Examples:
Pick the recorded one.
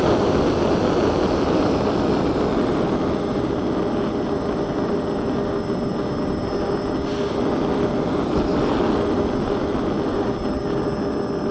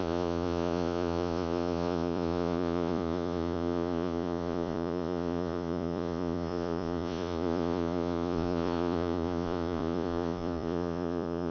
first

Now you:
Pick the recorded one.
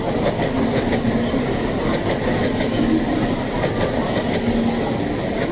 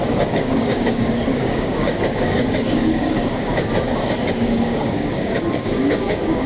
first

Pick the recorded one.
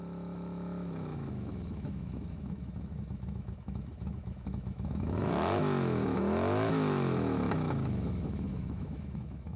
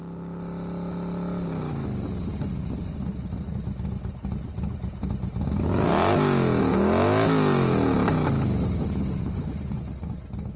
second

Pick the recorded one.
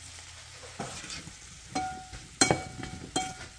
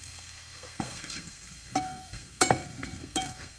first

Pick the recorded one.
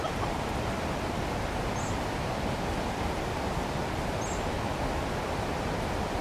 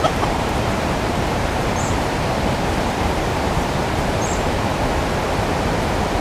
first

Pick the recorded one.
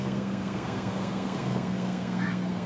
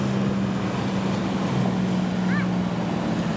second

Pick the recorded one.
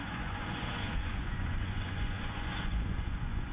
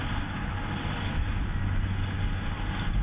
second